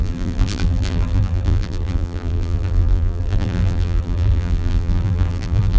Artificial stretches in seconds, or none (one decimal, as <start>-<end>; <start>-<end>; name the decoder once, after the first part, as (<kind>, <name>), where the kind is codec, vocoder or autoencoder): 0.0-5.8 (vocoder, BigVGAN v2)